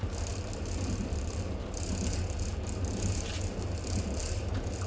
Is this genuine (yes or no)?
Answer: yes